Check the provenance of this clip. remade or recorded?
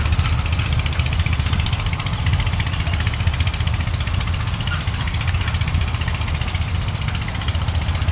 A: recorded